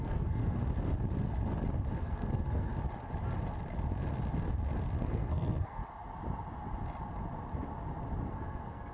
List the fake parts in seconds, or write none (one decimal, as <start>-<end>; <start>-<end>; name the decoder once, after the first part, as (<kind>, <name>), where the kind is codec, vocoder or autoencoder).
0.0-0.6 (codec, SNAC); 2.0-2.7; 5.0-5.8; 8.3-8.9